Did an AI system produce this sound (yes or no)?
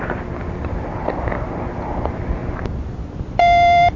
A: no